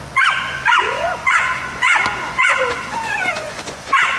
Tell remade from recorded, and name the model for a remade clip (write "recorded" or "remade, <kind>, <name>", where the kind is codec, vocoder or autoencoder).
remade, vocoder, Vocos